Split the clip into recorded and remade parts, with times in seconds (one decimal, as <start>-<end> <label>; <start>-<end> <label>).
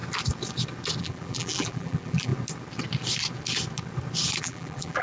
0.0-1.0 recorded; 1.0-2.3 remade; 2.3-4.4 recorded; 4.4-5.0 remade